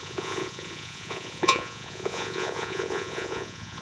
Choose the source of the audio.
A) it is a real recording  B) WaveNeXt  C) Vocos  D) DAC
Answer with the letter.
C